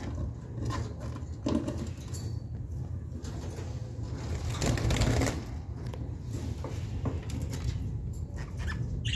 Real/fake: real